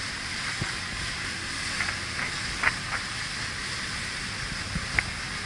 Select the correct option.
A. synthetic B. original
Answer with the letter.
A